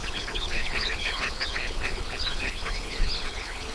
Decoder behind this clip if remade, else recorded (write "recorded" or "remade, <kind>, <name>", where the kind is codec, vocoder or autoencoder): remade, codec, HILCodec